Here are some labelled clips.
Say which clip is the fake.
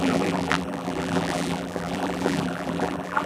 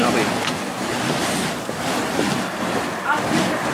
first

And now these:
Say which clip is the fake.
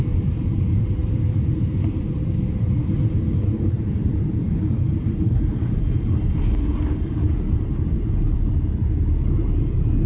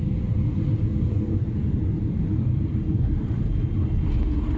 first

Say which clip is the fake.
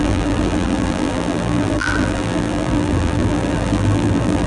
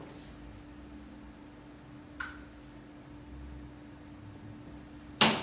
first